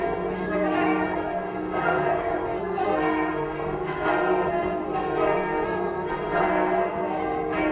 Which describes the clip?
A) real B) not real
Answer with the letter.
B